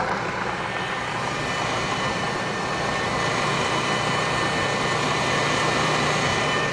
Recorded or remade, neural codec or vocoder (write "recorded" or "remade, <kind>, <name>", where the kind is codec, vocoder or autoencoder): remade, vocoder, BigVGAN v2